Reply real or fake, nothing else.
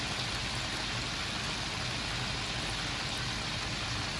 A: real